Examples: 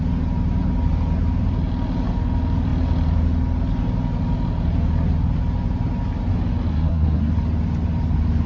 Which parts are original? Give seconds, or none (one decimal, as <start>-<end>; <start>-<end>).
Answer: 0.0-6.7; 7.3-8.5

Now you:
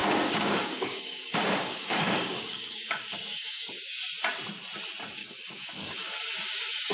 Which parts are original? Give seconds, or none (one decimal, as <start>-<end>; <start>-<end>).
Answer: 4.0-5.2

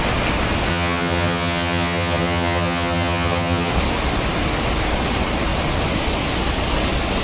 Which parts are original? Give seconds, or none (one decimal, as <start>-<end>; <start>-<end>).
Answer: 0.0-0.7; 3.7-7.2